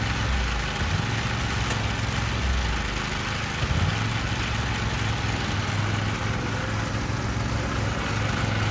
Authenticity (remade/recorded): recorded